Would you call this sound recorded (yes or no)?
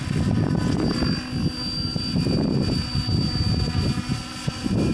yes